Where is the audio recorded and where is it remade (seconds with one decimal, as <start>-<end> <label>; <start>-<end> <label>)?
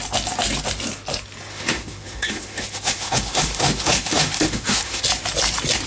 0.0-1.5 recorded; 1.5-5.0 remade; 5.0-5.9 recorded